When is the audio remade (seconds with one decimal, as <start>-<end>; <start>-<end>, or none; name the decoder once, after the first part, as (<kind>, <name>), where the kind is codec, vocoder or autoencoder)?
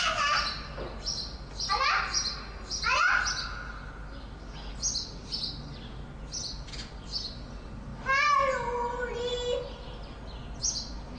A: none